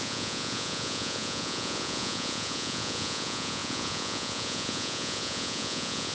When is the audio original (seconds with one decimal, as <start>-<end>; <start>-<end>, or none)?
none